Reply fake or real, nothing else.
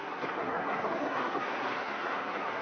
fake